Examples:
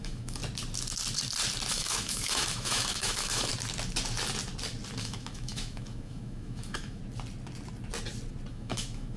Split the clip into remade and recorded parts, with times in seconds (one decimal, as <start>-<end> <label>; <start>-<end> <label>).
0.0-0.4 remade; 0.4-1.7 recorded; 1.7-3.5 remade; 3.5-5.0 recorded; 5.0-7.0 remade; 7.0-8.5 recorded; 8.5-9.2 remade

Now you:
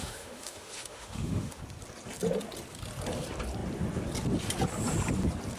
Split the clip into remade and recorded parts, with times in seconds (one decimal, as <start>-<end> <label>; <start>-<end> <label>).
0.0-1.6 remade; 1.6-5.6 recorded

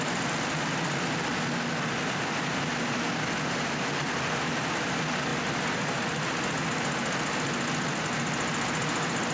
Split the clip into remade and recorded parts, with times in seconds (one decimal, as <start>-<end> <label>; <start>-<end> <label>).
0.0-9.3 recorded

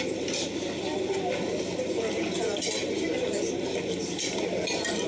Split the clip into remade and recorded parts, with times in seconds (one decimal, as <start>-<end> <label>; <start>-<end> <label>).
0.0-5.1 recorded